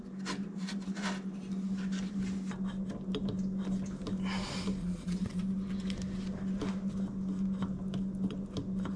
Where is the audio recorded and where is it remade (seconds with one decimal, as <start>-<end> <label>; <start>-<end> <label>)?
0.0-4.8 recorded; 4.8-5.4 remade; 5.4-9.0 recorded